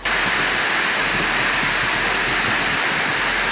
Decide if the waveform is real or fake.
real